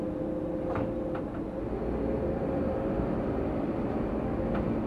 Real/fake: real